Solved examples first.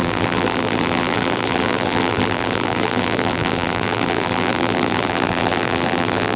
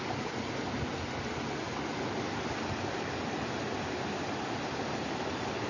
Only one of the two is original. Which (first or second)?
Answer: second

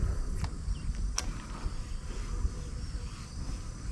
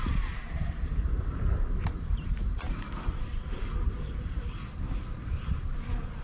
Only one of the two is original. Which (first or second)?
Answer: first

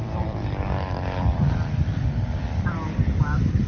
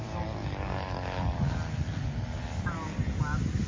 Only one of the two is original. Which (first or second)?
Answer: second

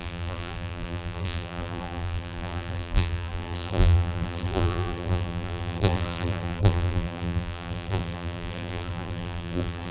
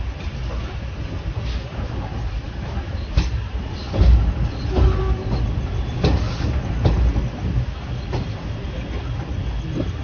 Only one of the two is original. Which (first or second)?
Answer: second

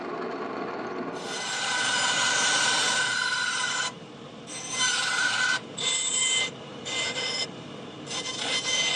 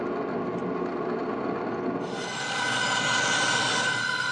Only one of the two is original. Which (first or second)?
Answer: second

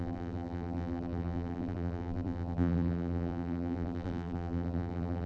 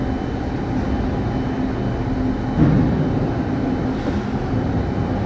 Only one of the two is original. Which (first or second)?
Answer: second